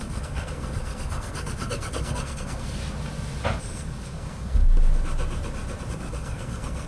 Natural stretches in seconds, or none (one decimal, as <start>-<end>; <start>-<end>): 2.8-3.6; 4.6-5.9